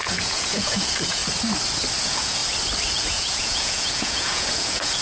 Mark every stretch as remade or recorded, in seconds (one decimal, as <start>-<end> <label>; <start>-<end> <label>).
0.0-1.2 remade; 1.2-2.0 recorded; 2.0-2.4 remade; 2.4-2.9 recorded; 2.9-5.0 remade